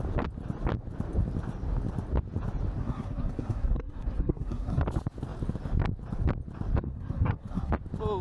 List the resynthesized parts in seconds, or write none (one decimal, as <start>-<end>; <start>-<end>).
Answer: 2.8-4.8; 6.8-7.7